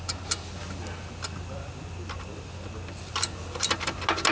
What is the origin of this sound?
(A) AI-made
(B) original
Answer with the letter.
B